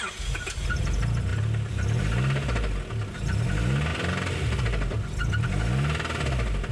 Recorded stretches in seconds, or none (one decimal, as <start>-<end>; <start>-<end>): 0.0-6.7